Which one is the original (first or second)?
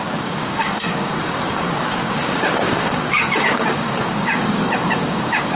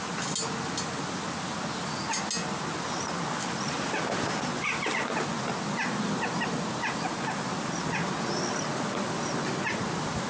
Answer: second